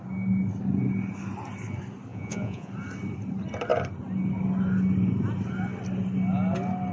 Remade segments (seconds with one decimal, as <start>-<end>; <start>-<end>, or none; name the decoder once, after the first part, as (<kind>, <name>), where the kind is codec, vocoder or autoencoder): 2.1-2.7 (vocoder, Vocos)